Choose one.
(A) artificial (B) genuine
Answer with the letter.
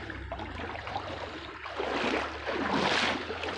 B